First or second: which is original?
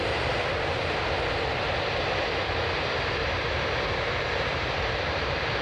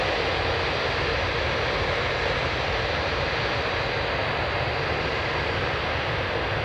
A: second